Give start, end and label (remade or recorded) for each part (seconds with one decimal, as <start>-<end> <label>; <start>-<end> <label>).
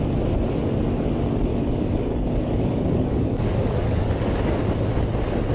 0.0-1.5 recorded; 1.5-4.1 remade; 4.1-5.5 recorded